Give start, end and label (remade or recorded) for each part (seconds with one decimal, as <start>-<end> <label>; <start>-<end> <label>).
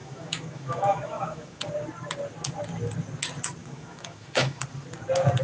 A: 0.0-1.6 remade; 1.6-3.6 recorded; 3.6-4.6 remade; 4.6-5.4 recorded